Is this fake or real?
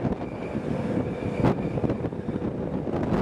real